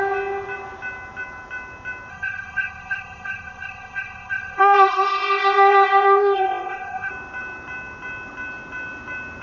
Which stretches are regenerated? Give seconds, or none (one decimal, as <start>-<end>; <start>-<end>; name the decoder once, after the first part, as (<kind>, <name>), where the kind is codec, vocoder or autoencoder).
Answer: 2.1-7.1 (codec, ZipCodec)